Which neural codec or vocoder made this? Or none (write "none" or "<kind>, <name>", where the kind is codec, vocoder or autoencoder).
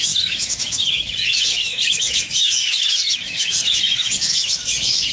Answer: autoencoder, DAC-VAE